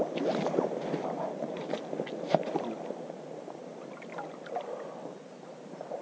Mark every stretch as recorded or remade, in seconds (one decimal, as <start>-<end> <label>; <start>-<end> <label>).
0.0-6.0 recorded